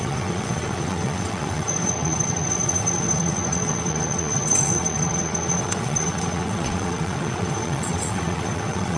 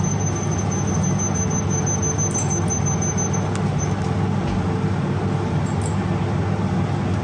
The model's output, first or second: first